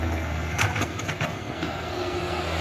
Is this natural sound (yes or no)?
no